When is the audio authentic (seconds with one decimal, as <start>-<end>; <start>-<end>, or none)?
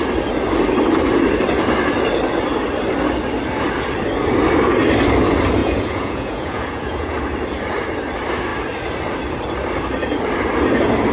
0.0-5.6; 7.1-11.1